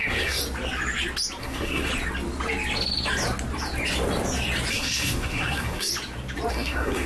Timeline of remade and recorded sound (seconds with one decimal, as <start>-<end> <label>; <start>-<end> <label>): 0.0-0.4 remade; 0.4-1.4 recorded; 1.4-1.9 remade; 1.9-4.7 recorded; 4.7-5.9 remade; 5.9-6.5 recorded; 6.5-7.1 remade